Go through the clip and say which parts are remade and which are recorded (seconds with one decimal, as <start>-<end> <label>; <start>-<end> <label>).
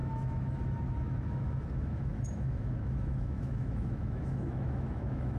0.0-5.4 remade